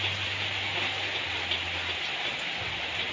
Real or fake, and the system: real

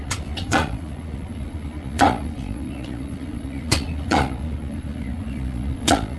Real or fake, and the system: fake, vocoder, Vocos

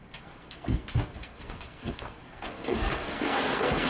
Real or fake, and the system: fake, codec, SNAC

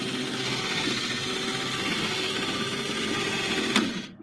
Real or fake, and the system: real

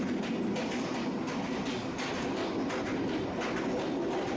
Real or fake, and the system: real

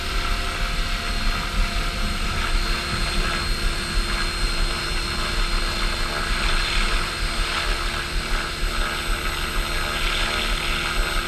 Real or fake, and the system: real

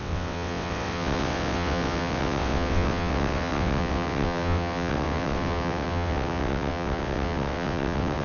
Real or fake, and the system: fake, vocoder, WaveNeXt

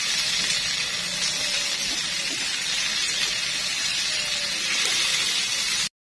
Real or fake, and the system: real